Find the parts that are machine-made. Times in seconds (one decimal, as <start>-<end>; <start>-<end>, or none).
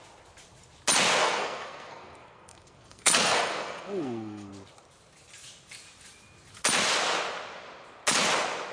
1.2-4.5